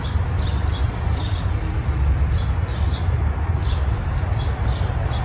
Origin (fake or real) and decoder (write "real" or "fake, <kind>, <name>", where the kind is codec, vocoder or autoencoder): real